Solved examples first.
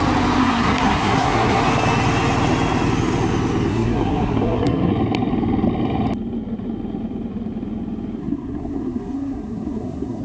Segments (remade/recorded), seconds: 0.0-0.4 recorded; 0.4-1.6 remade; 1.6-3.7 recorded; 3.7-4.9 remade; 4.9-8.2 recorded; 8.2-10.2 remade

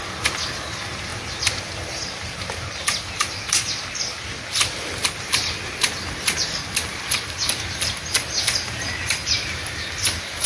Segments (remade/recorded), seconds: 0.0-10.5 recorded

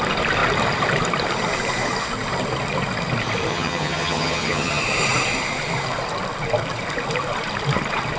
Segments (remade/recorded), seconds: 0.0-3.5 recorded; 3.5-4.8 remade; 4.8-8.2 recorded

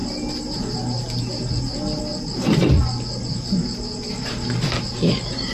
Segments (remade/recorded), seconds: 0.0-5.5 recorded

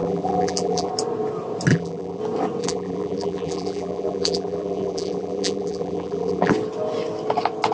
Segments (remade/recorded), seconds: 0.0-0.9 remade; 0.9-1.7 recorded; 1.7-2.2 remade; 2.2-2.6 recorded; 2.6-6.5 remade; 6.5-7.7 recorded

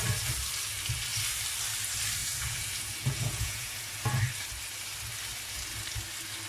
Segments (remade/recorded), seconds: 0.0-2.2 recorded; 2.2-4.2 remade; 4.2-6.5 recorded

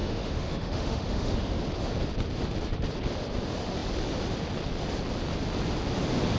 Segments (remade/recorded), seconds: 0.0-1.6 remade; 1.6-6.4 recorded

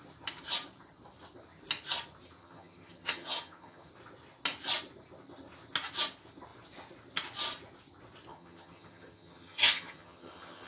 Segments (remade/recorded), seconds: 0.0-2.4 recorded; 2.4-3.9 remade; 3.9-8.3 recorded; 8.3-10.7 remade